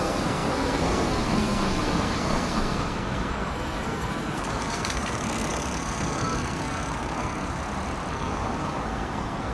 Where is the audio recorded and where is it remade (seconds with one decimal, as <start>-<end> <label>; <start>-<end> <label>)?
0.0-7.6 remade; 7.6-8.1 recorded; 8.1-9.5 remade